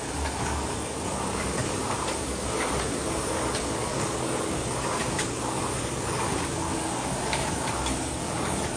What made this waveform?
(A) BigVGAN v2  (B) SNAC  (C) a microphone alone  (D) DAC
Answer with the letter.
D